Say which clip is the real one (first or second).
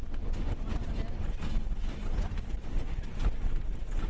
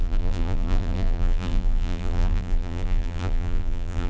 first